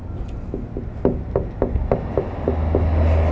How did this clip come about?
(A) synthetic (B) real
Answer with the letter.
B